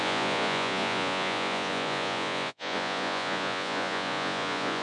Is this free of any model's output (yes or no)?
no